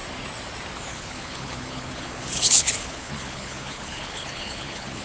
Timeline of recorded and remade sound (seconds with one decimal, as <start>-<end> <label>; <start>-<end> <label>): 0.0-0.9 recorded; 0.9-5.0 remade